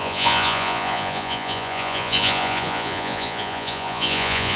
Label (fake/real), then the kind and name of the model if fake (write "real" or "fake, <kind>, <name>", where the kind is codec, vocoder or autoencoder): fake, vocoder, Vocos